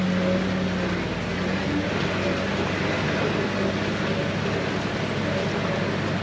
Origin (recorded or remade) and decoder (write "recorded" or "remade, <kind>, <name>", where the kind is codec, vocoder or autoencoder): recorded